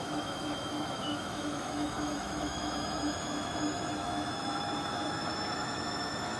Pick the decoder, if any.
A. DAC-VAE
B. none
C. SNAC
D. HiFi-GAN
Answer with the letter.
A